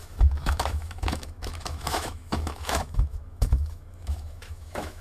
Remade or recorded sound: remade